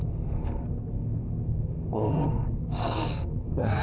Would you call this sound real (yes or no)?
no